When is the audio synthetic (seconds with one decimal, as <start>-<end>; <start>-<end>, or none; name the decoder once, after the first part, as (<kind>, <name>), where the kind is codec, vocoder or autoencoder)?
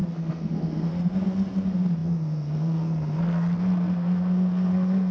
0.0-5.1 (codec, SNAC)